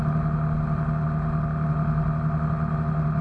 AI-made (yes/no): no